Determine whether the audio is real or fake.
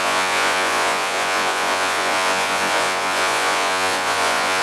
fake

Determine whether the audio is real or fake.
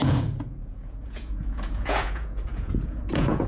fake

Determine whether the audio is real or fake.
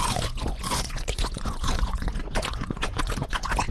fake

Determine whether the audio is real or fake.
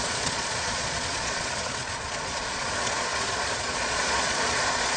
fake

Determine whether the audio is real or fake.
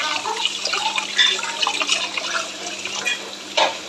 real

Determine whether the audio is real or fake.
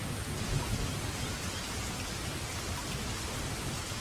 real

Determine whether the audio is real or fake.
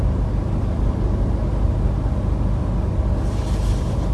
real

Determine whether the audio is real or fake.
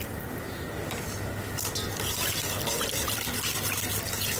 real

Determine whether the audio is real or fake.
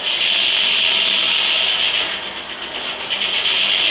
real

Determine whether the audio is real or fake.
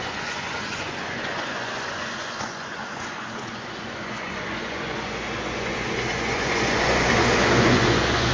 fake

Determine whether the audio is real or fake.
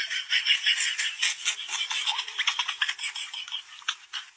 real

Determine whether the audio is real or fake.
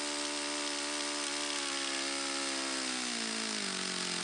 real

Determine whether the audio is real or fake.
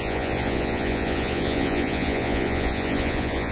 fake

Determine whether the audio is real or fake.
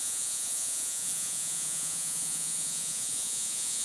fake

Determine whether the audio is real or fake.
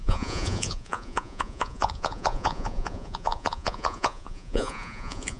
fake